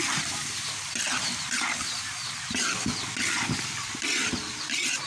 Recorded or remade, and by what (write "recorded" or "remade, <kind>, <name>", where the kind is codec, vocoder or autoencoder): recorded